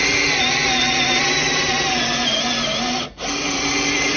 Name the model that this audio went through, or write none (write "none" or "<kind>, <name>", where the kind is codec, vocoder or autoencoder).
none